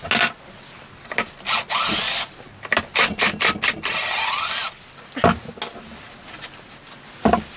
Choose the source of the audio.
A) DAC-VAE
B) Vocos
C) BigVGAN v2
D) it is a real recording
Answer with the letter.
D